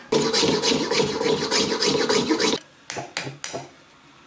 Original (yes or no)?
yes